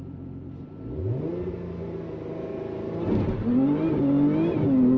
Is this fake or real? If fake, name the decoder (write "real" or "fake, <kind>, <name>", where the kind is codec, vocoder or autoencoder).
real